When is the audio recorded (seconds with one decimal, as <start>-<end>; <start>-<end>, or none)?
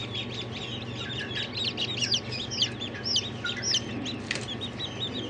0.0-5.3